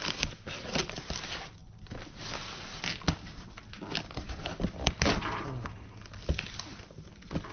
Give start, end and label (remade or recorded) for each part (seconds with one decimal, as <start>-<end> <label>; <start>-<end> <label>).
0.0-7.5 recorded